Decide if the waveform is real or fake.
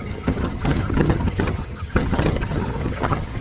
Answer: fake